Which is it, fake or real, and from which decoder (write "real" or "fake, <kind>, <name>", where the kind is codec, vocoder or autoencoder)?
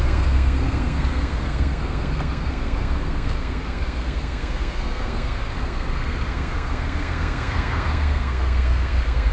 fake, codec, SNAC